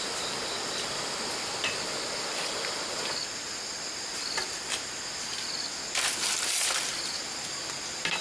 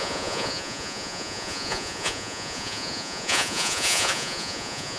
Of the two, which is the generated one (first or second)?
second